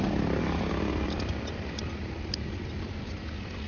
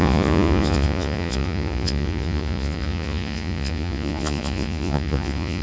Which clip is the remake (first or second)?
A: second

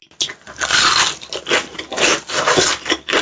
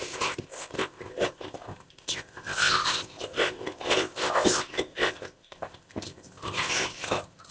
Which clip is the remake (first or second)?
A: second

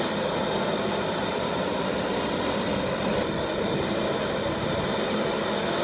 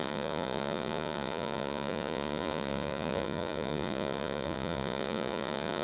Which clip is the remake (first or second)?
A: second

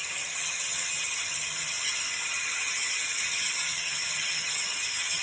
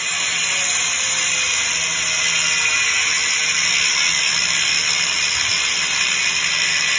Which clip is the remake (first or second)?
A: first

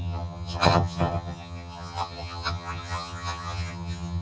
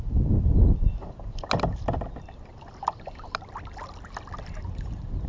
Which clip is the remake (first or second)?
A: first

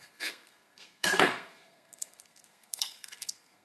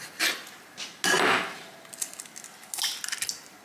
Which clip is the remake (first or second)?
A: first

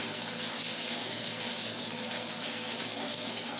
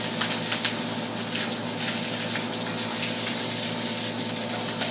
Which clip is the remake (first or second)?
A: first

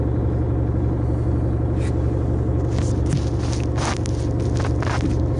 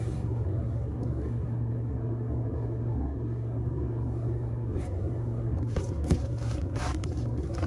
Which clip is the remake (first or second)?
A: second